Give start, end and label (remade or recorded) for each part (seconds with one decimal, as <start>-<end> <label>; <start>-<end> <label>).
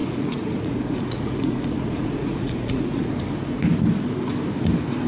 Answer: 0.0-3.1 remade; 3.1-5.1 recorded